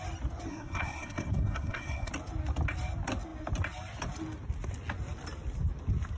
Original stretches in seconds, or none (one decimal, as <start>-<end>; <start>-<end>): 0.0-0.5; 2.1-6.2